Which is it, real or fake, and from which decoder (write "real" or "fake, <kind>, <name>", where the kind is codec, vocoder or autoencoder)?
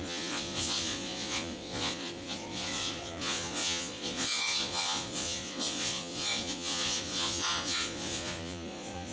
fake, vocoder, Vocos